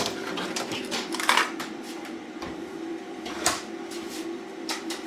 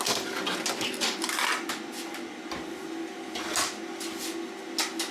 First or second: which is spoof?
first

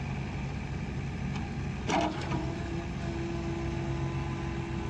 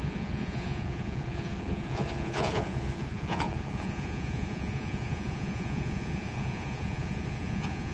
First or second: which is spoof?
second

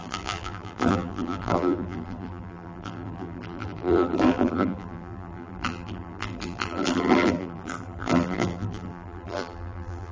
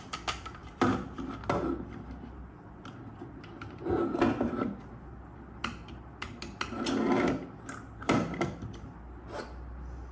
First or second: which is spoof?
first